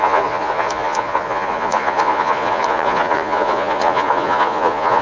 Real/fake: fake